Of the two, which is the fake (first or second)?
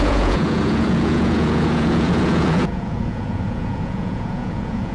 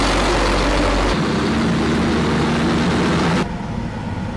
first